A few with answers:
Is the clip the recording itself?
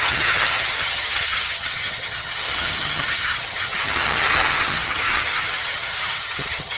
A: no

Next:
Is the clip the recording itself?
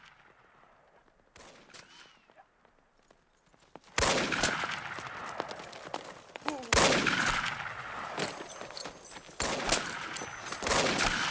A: yes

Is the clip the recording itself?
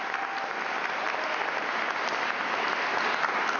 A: yes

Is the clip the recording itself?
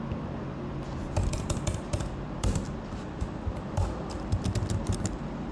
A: no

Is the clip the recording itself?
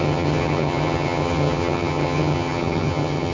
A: no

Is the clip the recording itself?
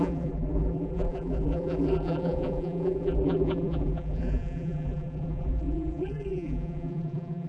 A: no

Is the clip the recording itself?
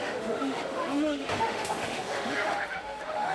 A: no